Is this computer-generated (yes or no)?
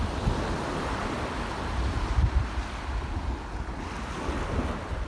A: no